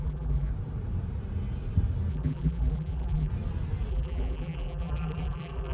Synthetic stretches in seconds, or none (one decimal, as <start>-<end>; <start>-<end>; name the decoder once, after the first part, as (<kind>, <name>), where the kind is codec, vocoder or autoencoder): 0.0-0.5 (vocoder, BigVGAN v2); 2.1-3.3; 3.9-5.7